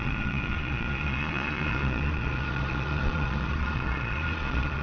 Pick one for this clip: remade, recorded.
remade